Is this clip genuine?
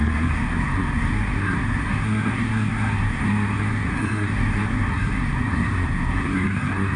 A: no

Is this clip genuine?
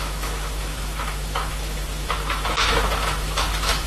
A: no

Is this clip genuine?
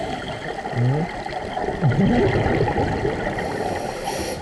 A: yes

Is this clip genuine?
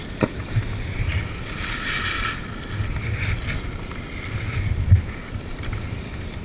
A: yes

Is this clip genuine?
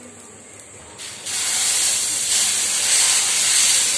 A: yes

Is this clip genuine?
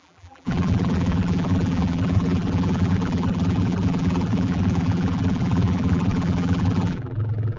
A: no